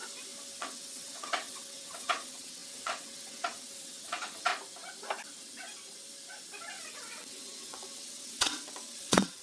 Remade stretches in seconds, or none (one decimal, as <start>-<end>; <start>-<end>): 0.6-4.5; 6.7-9.4